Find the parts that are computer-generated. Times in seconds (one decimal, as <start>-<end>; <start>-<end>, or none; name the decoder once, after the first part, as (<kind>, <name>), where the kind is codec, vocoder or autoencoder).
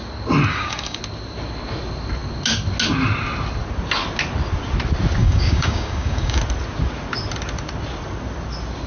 0.5-1.0 (codec, DAC); 5.2-6.4